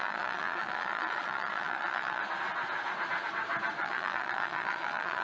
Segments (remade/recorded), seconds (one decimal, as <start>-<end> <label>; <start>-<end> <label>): 0.0-2.2 remade; 2.2-3.8 recorded; 3.8-5.2 remade